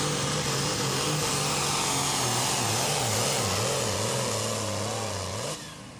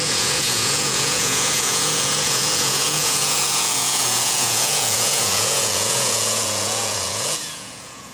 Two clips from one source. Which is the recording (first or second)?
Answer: first